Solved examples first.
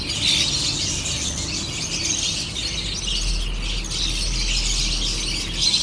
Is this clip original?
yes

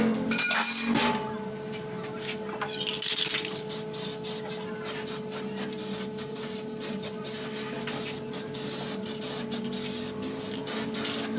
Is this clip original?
yes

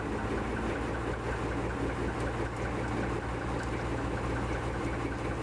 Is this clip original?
yes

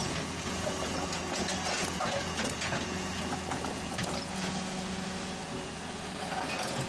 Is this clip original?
no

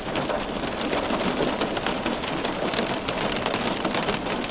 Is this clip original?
yes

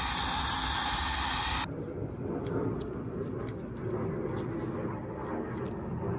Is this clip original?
yes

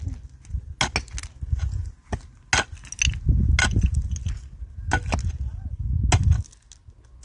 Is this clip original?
yes